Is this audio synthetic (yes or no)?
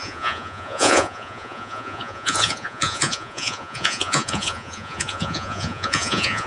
yes